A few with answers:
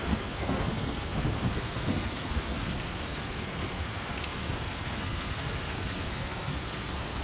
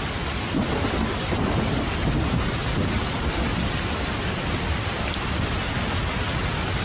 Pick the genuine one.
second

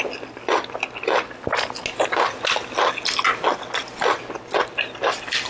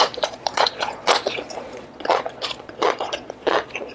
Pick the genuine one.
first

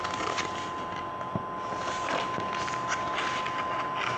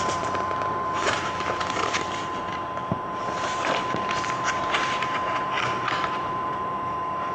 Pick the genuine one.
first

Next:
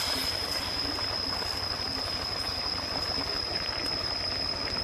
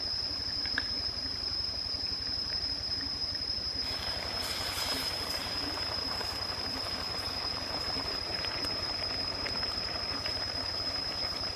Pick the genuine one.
first